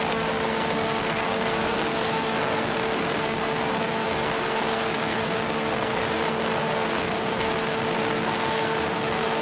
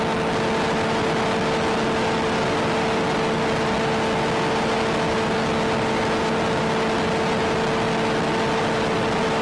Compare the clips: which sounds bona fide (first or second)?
second